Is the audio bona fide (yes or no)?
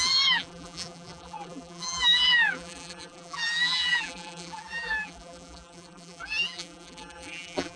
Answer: no